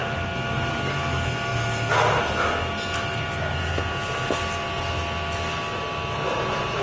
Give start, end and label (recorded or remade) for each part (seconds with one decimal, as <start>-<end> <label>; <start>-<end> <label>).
0.0-6.8 recorded